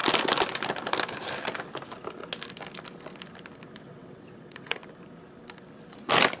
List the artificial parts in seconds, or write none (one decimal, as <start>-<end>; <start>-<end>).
3.8-4.8